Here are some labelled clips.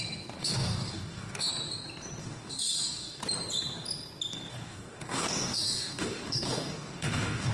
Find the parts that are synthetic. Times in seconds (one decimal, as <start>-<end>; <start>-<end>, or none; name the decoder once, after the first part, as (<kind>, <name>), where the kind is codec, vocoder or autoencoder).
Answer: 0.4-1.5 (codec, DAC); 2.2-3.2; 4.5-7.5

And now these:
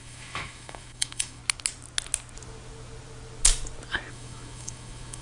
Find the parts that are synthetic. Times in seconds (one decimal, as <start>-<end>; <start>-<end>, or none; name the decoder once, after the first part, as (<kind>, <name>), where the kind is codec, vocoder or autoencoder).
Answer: 0.0-1.4 (autoencoder, DAC-VAE); 4.1-5.2

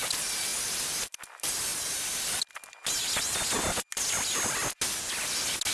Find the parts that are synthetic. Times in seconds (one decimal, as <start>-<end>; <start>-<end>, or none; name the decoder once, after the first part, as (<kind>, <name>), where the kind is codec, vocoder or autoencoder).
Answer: none

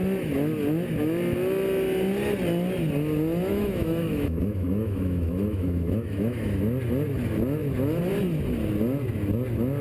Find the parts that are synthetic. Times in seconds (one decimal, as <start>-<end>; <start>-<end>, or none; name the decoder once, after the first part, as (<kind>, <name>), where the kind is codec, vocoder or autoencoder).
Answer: 3.5-6.6 (autoencoder, DAC-VAE)

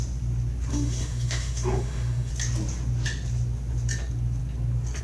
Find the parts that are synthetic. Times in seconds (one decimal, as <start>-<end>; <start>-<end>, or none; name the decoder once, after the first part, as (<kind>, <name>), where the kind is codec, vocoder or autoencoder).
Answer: 0.7-2.3 (autoencoder, DAC-VAE)

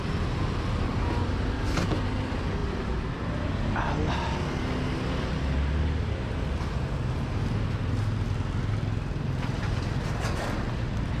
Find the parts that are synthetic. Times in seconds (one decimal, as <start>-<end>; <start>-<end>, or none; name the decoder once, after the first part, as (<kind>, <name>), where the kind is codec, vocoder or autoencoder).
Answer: none